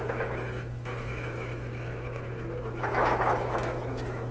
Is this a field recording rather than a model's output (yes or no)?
no